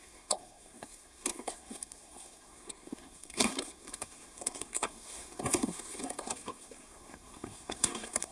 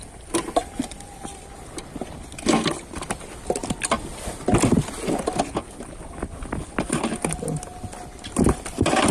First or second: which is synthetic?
first